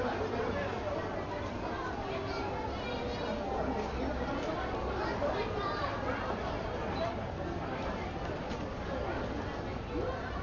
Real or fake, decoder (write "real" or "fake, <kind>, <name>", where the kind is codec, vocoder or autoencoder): real